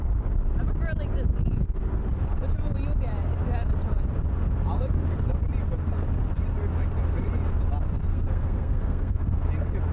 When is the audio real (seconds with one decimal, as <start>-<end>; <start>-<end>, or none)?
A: 0.0-8.1; 9.5-9.9